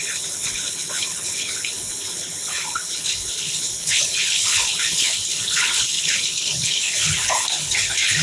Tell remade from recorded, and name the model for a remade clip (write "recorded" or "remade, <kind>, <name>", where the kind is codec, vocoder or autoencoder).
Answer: remade, codec, HILCodec